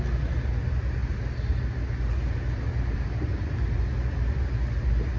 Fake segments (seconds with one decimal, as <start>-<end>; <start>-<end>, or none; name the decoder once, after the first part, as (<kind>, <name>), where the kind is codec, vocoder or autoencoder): none